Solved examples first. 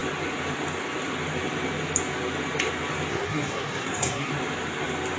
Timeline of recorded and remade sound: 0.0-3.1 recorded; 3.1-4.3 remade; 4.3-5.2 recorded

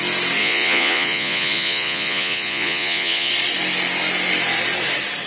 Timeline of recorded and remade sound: 0.0-0.4 recorded; 0.4-3.3 remade; 3.3-5.3 recorded

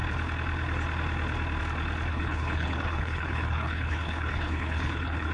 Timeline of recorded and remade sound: 0.0-2.1 recorded; 2.1-5.3 remade